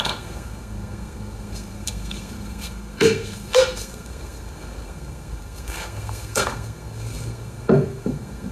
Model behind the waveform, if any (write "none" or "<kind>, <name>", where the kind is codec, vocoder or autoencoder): codec, SNAC